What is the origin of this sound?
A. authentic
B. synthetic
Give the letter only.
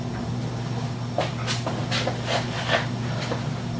A